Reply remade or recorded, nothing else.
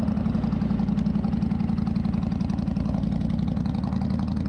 recorded